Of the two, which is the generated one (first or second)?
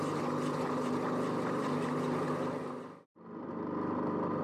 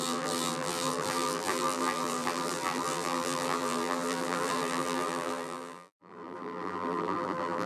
second